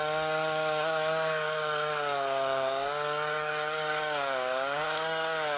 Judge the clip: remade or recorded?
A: remade